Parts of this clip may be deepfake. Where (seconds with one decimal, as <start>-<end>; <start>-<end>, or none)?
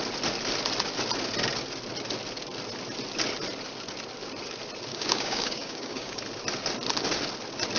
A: 4.9-6.2